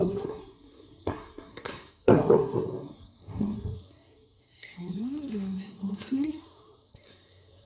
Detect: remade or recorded remade